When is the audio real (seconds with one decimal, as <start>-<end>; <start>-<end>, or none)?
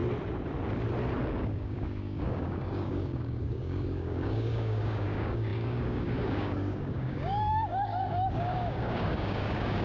0.0-1.3